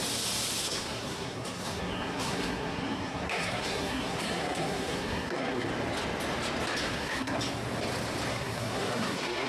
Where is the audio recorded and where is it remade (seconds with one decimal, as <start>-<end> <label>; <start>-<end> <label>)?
0.0-0.6 recorded; 0.6-5.7 remade; 5.7-6.8 recorded; 6.8-7.4 remade; 7.4-8.3 recorded; 8.3-9.5 remade